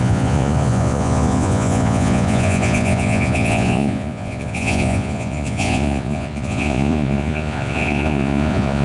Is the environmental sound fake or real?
fake